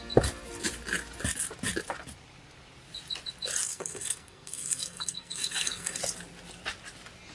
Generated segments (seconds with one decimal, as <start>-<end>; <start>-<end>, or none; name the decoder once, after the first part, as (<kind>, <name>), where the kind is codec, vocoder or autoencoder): 3.6-6.0 (codec, SNAC)